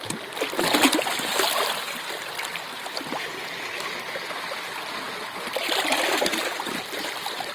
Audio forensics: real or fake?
real